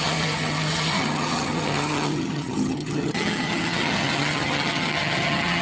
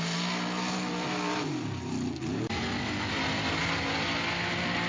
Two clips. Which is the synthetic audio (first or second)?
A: first